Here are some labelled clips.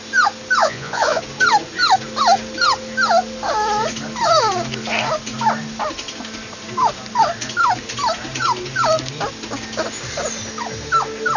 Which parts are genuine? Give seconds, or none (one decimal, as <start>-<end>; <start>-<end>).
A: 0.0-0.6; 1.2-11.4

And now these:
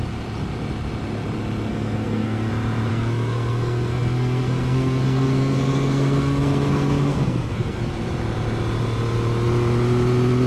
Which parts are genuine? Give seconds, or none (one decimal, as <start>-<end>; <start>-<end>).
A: 0.0-1.7; 2.5-2.9; 7.9-10.5

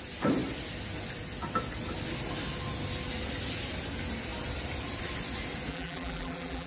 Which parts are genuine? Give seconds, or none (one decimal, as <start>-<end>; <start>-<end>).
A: 0.0-5.7

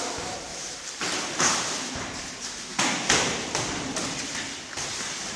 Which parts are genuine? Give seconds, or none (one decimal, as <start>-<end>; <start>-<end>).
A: 0.0-0.5; 1.4-2.7

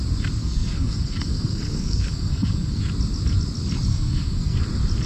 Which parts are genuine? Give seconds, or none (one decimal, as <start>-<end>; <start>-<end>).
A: 0.0-0.4; 2.8-3.9; 4.6-5.1